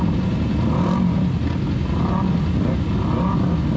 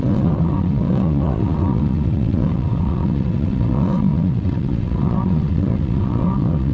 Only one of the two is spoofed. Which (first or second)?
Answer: second